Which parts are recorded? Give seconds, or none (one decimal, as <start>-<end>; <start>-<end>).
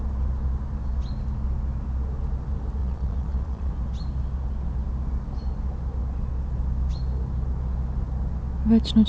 0.0-2.8; 3.7-9.1